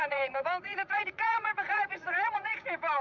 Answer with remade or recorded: remade